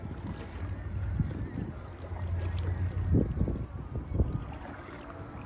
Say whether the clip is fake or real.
real